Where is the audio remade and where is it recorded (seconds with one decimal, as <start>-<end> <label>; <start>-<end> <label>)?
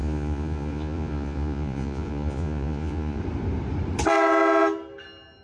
0.0-3.2 remade; 3.2-5.4 recorded